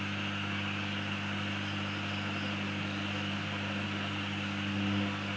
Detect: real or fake real